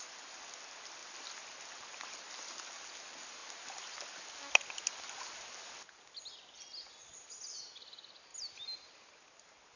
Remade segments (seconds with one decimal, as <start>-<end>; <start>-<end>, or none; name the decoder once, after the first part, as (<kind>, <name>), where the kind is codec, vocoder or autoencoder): none